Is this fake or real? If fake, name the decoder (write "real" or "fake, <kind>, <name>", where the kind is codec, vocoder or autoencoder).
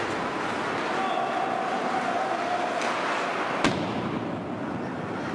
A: real